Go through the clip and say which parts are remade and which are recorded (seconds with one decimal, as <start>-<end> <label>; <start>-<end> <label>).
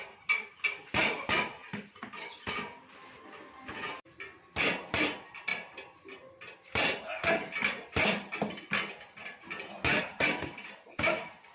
0.0-11.5 recorded